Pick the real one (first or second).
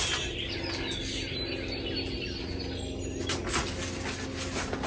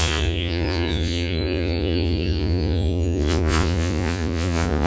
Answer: first